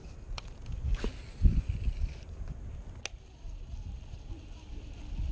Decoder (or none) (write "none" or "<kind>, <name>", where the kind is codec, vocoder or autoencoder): none